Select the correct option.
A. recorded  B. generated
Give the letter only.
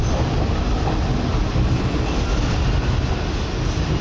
A